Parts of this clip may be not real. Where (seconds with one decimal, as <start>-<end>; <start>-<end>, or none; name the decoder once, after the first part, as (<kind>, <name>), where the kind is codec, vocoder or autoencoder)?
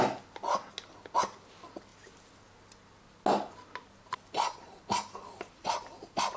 none